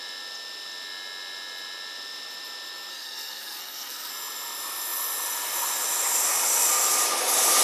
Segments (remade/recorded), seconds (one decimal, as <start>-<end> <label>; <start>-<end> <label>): 0.0-2.9 recorded; 2.9-4.1 remade; 4.1-7.6 recorded